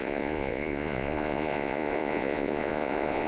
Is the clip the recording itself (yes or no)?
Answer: no